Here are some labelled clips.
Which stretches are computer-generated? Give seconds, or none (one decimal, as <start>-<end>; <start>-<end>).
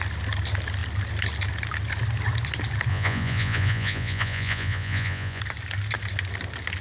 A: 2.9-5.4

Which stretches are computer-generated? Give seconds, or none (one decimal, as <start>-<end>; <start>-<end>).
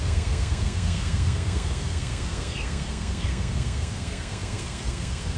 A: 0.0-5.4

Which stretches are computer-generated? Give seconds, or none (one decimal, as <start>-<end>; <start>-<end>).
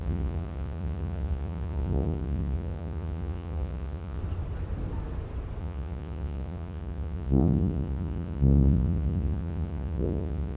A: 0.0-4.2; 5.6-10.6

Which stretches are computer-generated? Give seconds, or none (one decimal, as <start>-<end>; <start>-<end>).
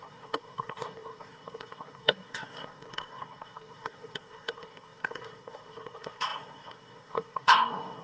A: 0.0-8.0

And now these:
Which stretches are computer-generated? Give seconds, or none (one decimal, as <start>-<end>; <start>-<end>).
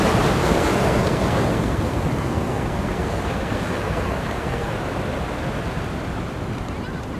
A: 0.4-4.7